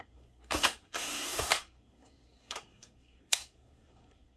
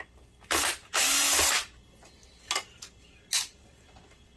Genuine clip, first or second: second